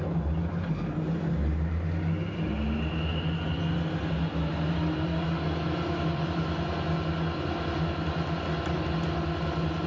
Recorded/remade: recorded